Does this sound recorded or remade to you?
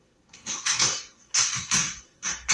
remade